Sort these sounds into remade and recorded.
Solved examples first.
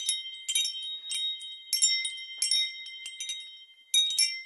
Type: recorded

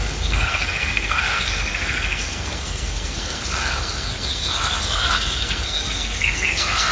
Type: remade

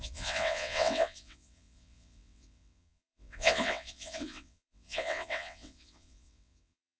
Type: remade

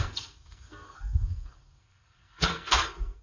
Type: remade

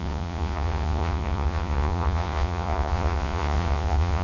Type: remade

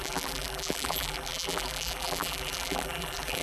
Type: remade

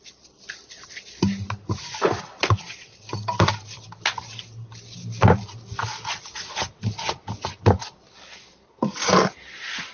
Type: recorded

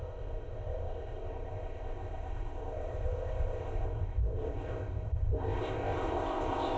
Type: remade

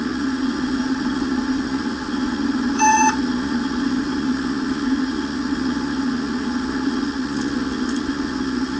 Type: remade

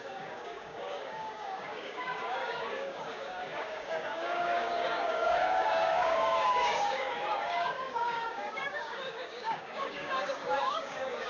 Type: remade